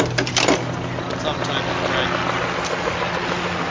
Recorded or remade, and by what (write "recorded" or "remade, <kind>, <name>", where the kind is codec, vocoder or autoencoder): recorded